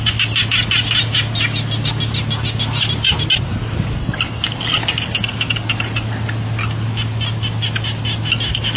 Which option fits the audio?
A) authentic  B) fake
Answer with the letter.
A